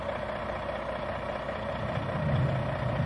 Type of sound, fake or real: real